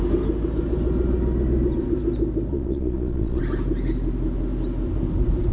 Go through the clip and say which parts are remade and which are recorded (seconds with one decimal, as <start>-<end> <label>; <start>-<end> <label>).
0.0-2.5 recorded; 2.5-3.4 remade; 3.4-5.5 recorded